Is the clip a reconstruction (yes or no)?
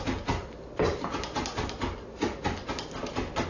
no